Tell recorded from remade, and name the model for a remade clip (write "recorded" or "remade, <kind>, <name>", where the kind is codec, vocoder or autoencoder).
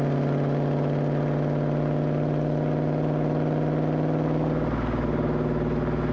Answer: recorded